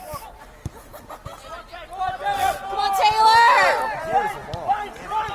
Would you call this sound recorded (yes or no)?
yes